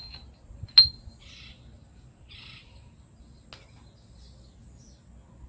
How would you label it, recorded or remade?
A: recorded